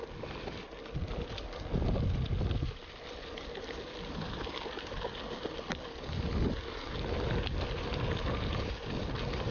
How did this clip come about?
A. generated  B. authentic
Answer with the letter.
B